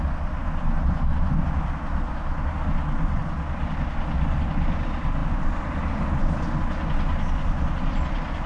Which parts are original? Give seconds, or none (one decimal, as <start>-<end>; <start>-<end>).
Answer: 0.0-8.5